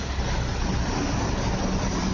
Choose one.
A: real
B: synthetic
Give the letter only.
A